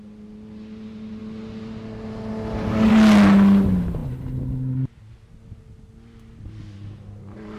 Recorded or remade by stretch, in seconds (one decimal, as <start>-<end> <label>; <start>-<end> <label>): 0.0-7.6 recorded